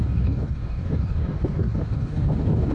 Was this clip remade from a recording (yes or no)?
yes